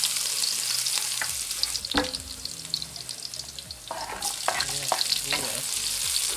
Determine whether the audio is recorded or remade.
recorded